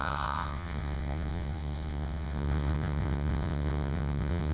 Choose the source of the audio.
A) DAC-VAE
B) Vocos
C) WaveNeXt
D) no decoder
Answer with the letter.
C